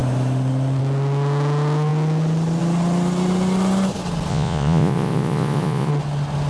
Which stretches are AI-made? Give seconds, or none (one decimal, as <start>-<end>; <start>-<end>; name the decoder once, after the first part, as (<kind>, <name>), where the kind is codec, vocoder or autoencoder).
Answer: 4.3-5.9 (vocoder, Vocos)